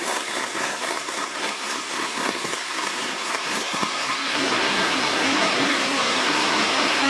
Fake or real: fake